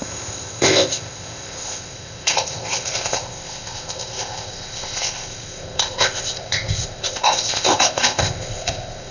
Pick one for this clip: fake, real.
fake